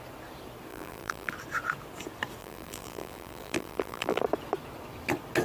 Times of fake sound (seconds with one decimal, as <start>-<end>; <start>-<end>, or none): 0.7-1.3; 2.4-4.2